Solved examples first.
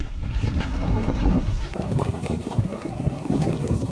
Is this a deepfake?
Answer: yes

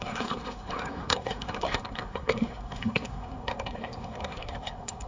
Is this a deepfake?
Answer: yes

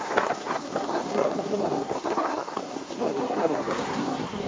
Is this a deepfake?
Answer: yes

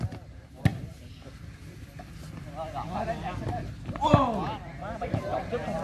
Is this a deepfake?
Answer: no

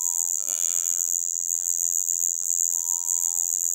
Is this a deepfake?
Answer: yes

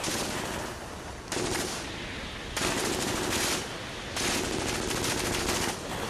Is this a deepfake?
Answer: no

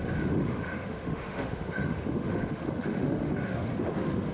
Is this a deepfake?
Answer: yes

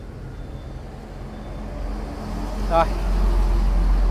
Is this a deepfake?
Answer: no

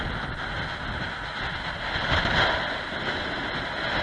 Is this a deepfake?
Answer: no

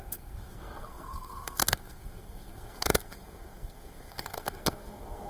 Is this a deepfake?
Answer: yes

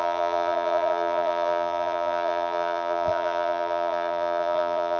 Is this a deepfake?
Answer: yes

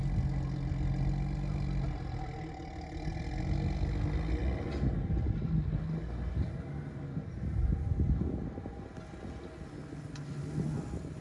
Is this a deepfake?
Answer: no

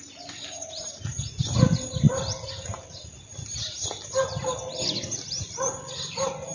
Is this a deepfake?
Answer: no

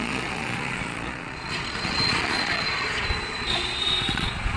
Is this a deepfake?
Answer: yes